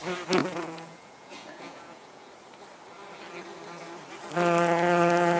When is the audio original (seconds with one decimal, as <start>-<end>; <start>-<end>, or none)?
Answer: 0.0-0.4; 2.3-5.4